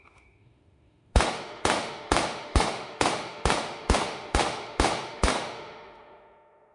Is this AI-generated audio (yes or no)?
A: yes